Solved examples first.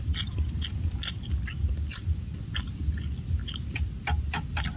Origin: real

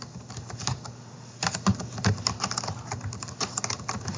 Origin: real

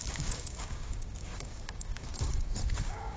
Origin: fake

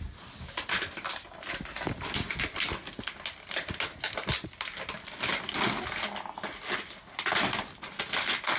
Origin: real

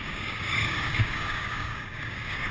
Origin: fake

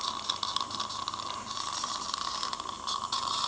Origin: real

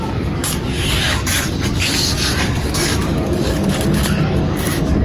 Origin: fake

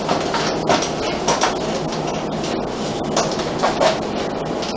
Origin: real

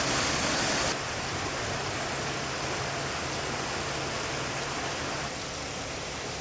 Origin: real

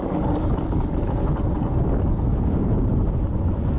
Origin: real